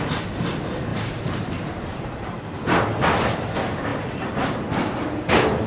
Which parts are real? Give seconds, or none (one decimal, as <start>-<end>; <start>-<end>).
0.0-0.9; 2.4-5.7